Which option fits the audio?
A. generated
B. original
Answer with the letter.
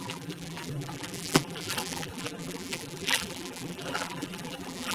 A